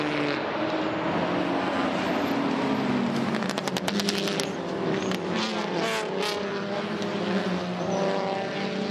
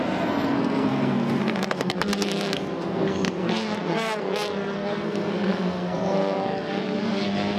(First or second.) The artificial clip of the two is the second